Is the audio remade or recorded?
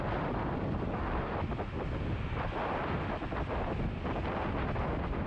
recorded